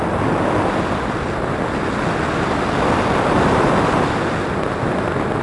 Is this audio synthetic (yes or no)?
no